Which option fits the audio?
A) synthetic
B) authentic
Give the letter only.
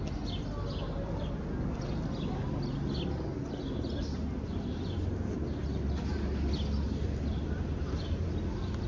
B